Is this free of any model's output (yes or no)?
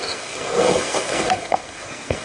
no